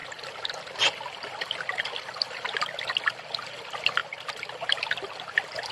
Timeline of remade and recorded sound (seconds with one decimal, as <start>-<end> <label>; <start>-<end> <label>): 0.0-5.7 recorded